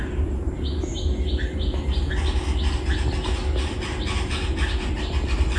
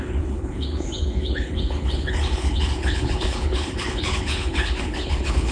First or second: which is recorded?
first